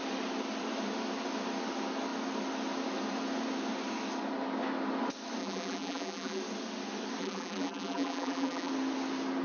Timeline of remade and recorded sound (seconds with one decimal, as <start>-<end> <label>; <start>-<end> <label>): 0.0-5.4 recorded; 5.4-6.4 remade; 6.4-7.2 recorded; 7.2-8.7 remade; 8.7-9.4 recorded